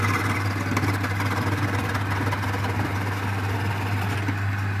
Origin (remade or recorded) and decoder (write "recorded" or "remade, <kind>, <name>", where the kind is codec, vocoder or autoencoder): recorded